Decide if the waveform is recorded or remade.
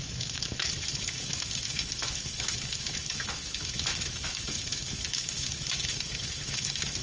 remade